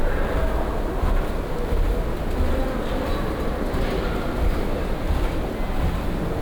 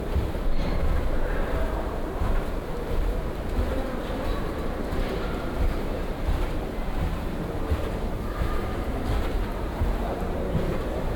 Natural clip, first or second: first